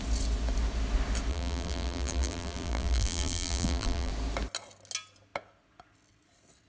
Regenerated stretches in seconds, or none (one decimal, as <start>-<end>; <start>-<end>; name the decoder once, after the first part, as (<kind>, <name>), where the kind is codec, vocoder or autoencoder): 1.3-4.1 (vocoder, BigVGAN v2)